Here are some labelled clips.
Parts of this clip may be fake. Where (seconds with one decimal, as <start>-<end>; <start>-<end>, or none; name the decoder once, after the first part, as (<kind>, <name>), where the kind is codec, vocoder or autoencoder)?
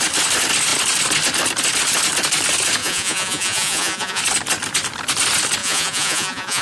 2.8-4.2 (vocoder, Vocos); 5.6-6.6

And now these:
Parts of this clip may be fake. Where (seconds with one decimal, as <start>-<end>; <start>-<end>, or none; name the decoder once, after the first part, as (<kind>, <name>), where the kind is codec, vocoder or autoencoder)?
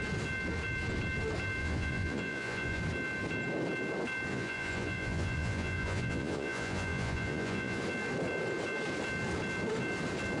1.6-2.8 (vocoder, Vocos); 4.3-7.8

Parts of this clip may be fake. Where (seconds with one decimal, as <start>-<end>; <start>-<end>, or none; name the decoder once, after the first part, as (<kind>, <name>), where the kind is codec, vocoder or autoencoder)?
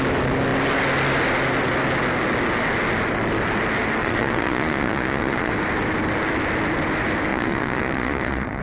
4.0-5.5 (vocoder, Vocos); 7.3-8.6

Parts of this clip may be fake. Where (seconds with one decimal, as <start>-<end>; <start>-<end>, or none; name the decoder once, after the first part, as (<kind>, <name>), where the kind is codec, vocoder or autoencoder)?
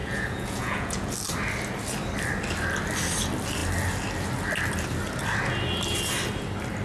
0.0-1.1 (vocoder, Vocos)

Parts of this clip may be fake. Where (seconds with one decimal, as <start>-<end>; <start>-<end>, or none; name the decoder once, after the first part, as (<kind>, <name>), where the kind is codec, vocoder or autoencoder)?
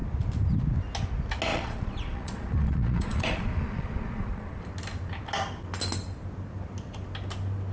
1.5-4.6 (vocoder, Vocos)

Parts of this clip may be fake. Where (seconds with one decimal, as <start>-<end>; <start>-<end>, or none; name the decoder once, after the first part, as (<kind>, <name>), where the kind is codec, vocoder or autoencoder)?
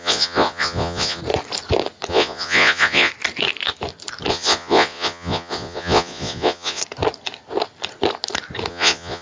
0.0-1.2 (vocoder, Vocos); 2.1-3.1; 4.3-6.8; 8.7-9.2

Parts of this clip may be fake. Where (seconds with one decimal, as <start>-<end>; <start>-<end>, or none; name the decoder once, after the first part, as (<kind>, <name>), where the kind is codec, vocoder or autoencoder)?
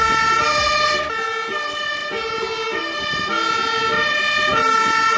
none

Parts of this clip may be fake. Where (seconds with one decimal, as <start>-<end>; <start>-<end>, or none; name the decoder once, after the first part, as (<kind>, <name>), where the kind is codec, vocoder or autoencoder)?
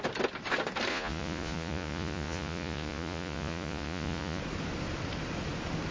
0.9-4.4 (vocoder, Vocos)